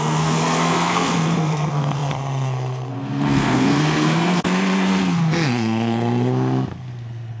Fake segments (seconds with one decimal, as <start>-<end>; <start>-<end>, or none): 0.0-7.4